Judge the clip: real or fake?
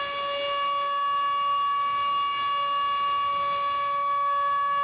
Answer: real